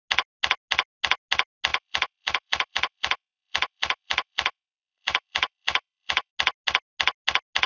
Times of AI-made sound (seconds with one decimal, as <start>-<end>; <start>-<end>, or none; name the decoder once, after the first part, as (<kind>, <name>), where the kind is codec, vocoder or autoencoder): 1.7-6.3 (vocoder, BigVGAN v2)